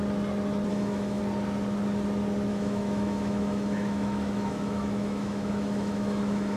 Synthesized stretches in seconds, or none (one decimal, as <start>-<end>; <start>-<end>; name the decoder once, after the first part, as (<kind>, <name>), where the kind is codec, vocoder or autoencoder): 0.7-1.2 (autoencoder, DAC-VAE); 2.5-6.6